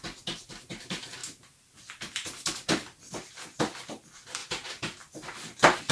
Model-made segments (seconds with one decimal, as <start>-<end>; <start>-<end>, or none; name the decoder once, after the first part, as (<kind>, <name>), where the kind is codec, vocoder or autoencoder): 1.2-3.1 (vocoder, BigVGAN v2); 4.4-5.1